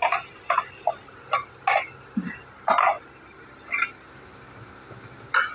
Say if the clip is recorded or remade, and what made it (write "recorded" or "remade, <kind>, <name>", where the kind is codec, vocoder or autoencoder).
recorded